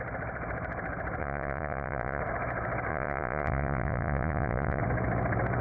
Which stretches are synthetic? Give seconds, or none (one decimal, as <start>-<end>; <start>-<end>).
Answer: 1.2-2.2; 2.9-4.8